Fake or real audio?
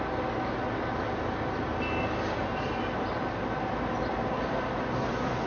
real